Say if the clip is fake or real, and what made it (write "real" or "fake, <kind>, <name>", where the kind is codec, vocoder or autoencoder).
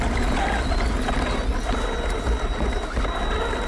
real